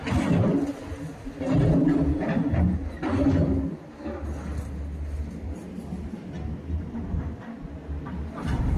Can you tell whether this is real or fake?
real